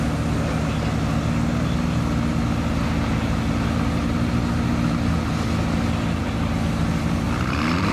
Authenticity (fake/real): real